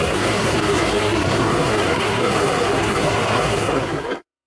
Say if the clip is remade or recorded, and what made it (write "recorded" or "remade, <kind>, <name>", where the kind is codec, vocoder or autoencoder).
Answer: remade, codec, SNAC